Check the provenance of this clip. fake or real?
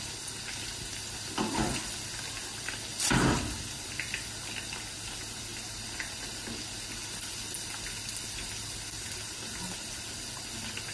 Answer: real